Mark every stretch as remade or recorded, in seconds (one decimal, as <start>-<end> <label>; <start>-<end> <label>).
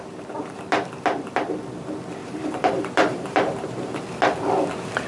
0.0-2.2 recorded; 2.2-4.0 remade; 4.0-5.1 recorded